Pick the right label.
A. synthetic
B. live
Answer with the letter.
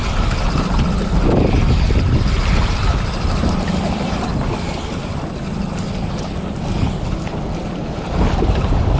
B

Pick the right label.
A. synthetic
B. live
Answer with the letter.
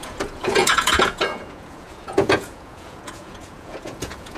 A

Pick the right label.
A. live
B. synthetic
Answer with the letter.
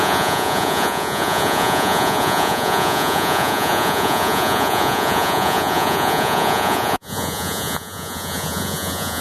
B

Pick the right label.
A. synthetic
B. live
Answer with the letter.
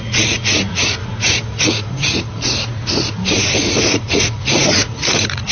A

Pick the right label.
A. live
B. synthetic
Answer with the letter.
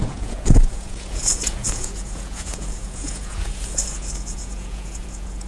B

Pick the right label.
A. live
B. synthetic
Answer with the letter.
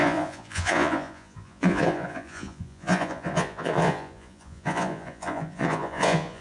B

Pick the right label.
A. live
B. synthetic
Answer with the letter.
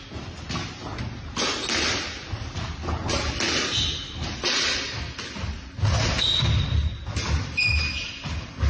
A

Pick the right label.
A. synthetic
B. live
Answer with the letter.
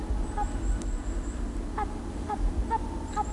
B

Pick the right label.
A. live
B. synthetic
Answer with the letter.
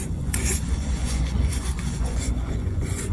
B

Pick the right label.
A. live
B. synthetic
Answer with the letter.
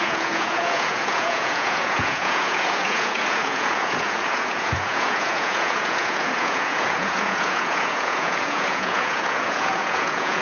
B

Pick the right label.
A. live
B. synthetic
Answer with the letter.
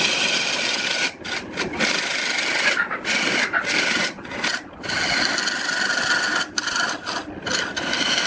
A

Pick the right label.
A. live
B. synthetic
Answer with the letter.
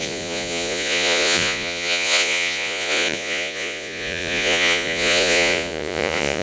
B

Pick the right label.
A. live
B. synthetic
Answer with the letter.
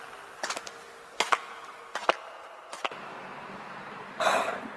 A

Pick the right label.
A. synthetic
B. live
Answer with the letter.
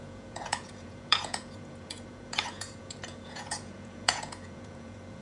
A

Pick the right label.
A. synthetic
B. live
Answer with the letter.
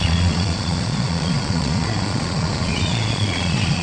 A